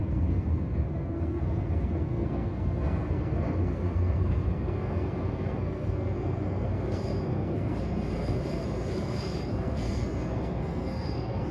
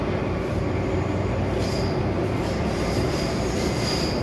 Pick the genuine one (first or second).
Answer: second